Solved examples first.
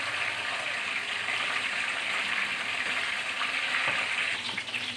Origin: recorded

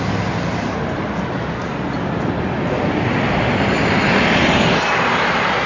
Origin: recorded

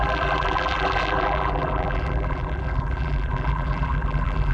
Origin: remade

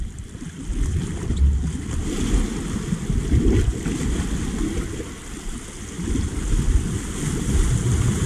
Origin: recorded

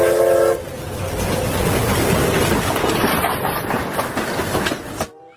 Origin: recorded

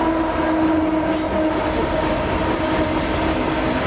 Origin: recorded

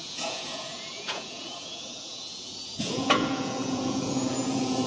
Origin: remade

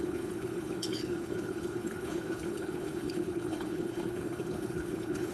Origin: remade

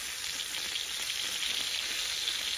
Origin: recorded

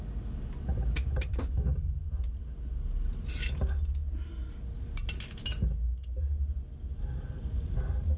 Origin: recorded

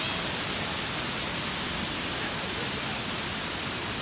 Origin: recorded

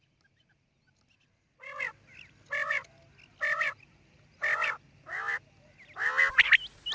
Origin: recorded